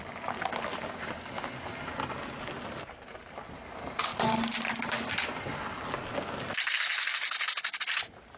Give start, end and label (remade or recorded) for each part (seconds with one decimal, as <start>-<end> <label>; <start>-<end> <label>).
0.0-8.4 recorded